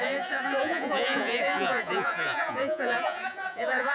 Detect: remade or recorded remade